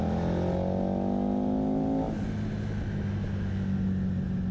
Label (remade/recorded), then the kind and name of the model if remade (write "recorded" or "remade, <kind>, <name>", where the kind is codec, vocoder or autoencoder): recorded